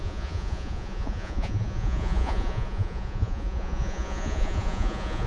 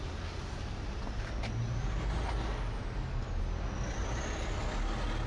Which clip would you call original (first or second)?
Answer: second